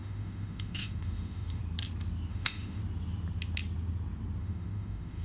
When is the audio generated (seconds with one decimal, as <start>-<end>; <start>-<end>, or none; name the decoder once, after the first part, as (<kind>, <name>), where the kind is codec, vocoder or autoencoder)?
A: 0.0-1.6 (autoencoder, DAC-VAE); 2.3-2.8; 4.4-5.2